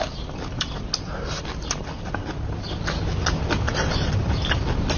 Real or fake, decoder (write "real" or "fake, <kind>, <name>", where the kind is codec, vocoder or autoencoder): real